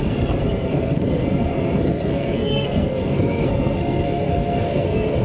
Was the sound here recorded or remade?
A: remade